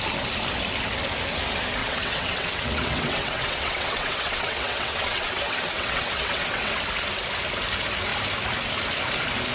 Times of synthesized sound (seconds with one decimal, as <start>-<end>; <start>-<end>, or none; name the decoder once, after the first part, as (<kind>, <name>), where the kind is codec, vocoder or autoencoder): 1.8-6.8 (vocoder, WaveNeXt)